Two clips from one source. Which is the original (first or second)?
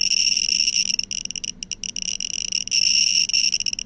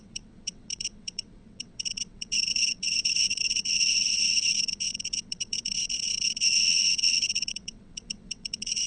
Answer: first